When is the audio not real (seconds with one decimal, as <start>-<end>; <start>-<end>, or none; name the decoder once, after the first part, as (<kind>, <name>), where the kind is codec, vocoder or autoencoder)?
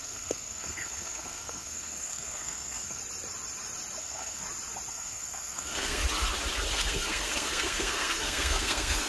0.0-3.0 (codec, SNAC); 4.0-4.4; 4.9-6.0; 6.7-9.1